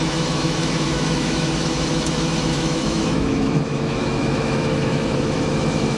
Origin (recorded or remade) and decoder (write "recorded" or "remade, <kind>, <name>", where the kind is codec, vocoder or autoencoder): remade, autoencoder, DAC-VAE